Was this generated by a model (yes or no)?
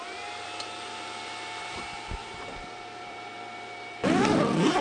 yes